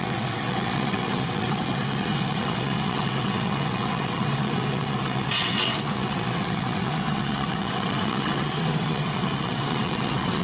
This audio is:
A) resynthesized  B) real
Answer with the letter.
A